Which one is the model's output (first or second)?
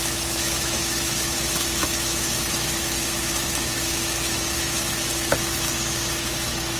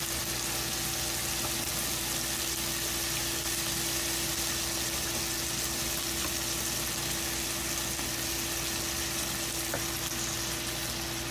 first